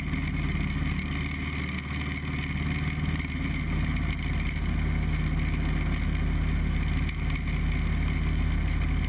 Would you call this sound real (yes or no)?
yes